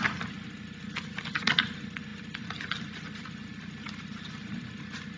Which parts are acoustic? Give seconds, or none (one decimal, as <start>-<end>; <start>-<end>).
0.0-5.2